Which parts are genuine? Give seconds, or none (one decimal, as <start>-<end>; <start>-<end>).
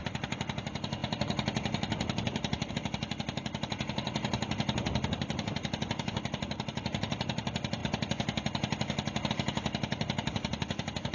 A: 7.8-9.3